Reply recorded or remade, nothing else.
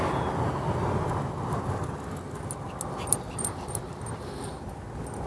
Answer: recorded